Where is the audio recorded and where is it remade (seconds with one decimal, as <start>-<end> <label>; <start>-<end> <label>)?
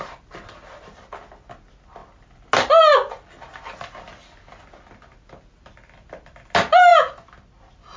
0.0-8.0 recorded